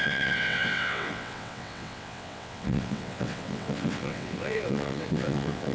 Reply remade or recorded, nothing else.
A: remade